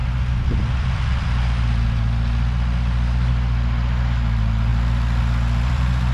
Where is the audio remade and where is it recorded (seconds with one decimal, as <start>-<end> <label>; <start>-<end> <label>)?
0.0-6.1 remade